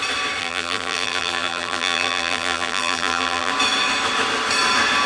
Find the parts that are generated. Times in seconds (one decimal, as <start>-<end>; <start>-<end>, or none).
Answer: 0.4-3.5